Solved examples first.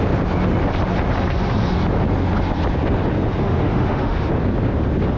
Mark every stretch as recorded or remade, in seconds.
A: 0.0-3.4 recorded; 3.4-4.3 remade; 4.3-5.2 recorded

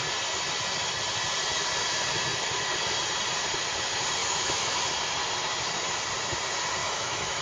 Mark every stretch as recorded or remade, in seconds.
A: 0.0-4.2 recorded; 4.2-4.8 remade; 4.8-6.8 recorded; 6.8-7.4 remade

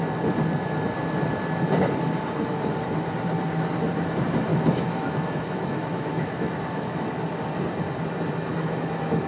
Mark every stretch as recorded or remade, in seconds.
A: 0.0-4.5 recorded; 4.5-7.1 remade; 7.1-8.5 recorded; 8.5-9.3 remade

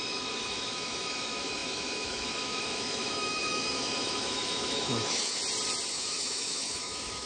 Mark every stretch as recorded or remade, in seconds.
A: 0.0-5.4 remade; 5.4-5.9 recorded; 5.9-7.3 remade

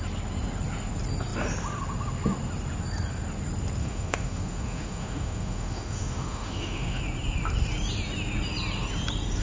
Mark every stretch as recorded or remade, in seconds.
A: 0.0-3.8 recorded; 3.8-7.0 remade; 7.0-9.4 recorded

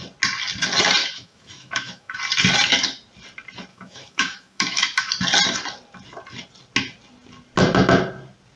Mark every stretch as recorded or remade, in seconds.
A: 0.0-1.0 recorded; 1.0-2.2 remade; 2.2-3.7 recorded; 3.7-5.1 remade; 5.1-8.6 recorded